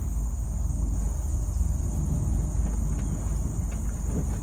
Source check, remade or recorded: recorded